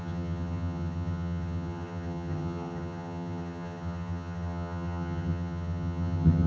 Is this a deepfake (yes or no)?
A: yes